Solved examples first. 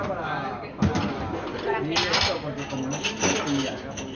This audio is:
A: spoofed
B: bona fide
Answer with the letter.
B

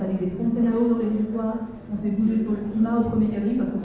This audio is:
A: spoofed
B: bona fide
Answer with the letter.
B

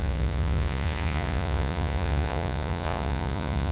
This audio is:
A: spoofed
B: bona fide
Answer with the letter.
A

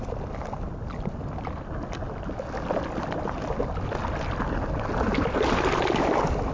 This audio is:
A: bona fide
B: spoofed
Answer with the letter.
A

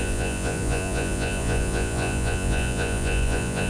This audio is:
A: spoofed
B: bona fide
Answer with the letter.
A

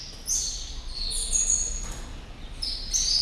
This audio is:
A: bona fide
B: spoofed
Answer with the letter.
A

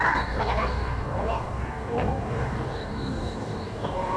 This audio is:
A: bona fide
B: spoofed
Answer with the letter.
B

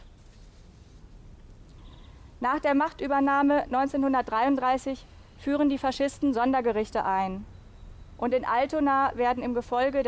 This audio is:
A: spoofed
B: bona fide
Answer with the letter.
B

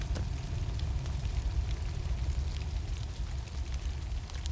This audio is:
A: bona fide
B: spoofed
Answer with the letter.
A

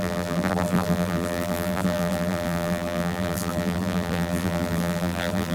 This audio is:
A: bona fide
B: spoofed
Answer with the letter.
B